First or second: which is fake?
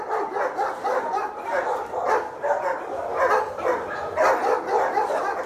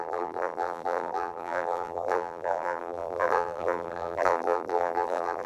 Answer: second